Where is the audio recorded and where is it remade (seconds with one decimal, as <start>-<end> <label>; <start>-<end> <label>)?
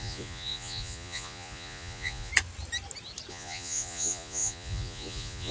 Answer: 0.0-2.3 remade; 2.3-3.3 recorded; 3.3-5.5 remade